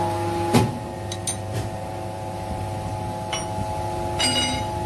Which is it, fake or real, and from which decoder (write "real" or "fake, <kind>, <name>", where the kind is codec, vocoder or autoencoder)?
real